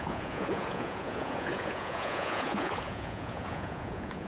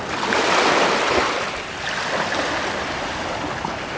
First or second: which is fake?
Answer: first